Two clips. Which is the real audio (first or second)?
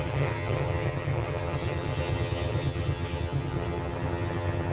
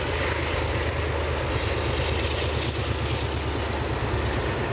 second